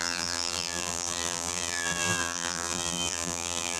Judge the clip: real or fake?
fake